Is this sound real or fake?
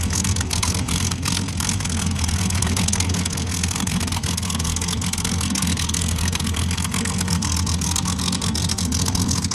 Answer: fake